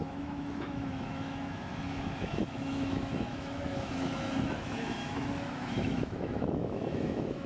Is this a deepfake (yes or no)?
yes